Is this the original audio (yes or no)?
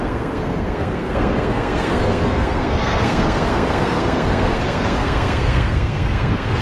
no